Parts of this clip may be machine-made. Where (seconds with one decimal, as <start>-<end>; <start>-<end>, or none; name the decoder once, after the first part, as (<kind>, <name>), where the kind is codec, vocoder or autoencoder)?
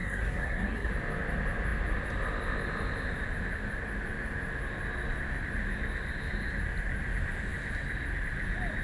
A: 0.0-0.9 (codec, SNAC)